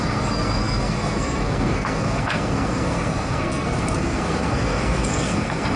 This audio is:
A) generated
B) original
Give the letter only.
A